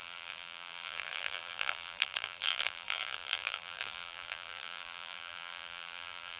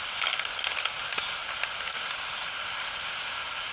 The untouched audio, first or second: second